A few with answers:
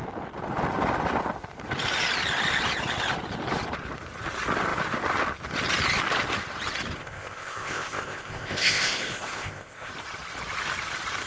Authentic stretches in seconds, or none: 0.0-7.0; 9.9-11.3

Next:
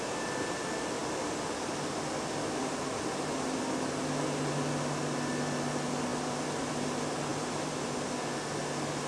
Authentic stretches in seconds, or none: 0.0-6.1; 6.7-7.3; 8.1-9.1

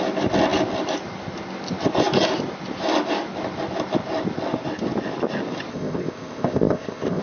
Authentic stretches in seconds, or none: 0.0-5.7

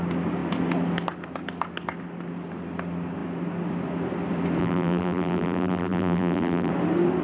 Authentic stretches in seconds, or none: 0.0-4.6; 6.7-7.2

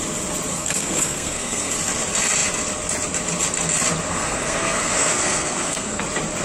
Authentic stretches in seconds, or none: 0.0-0.5; 1.7-4.1; 6.0-6.4